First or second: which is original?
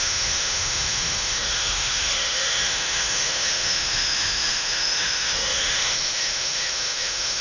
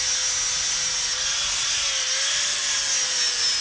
second